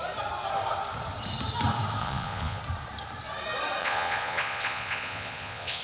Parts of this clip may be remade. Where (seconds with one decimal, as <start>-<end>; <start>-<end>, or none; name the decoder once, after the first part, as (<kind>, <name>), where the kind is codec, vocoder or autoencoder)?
2.0-2.6 (vocoder, Vocos); 3.8-5.8